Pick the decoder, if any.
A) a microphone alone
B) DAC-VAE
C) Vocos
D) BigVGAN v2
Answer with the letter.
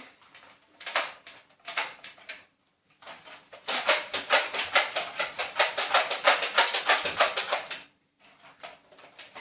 A